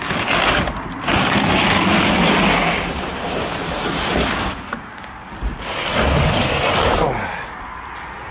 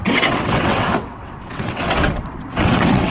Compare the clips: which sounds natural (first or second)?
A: first